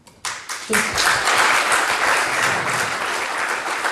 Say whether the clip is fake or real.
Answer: real